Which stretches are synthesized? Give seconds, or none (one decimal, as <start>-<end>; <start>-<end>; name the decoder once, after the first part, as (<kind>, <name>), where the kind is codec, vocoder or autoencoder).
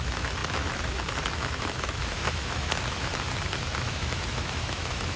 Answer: 0.0-3.1 (autoencoder, DAC-VAE); 3.8-5.2